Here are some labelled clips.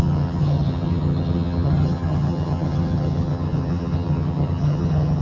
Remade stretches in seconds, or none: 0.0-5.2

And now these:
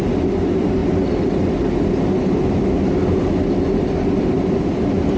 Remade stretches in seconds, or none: none

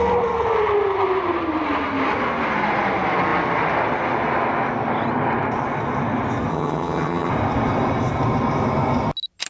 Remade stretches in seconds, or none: 6.5-7.3

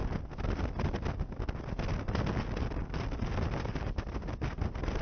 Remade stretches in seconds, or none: none